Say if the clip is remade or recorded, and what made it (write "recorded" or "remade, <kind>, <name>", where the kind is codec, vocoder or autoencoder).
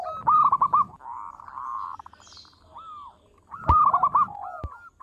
recorded